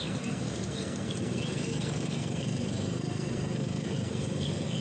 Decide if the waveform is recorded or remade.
remade